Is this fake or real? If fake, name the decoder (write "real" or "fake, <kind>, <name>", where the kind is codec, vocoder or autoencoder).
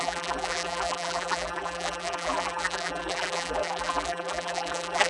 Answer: fake, vocoder, BigVGAN v2